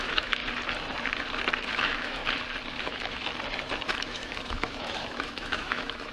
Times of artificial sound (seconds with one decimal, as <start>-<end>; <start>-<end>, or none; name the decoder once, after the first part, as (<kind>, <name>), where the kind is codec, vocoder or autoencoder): 0.0-0.4 (autoencoder, DAC-VAE); 1.6-2.2; 2.8-3.3; 3.9-6.1